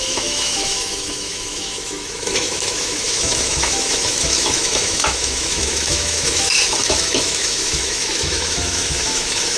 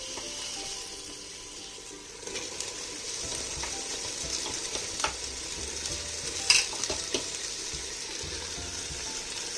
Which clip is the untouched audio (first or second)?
second